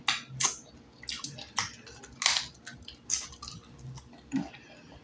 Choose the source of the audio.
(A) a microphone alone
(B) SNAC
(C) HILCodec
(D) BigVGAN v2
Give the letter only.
A